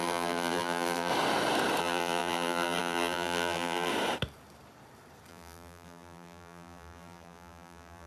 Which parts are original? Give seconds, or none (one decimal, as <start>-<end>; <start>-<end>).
1.1-1.8; 3.9-5.3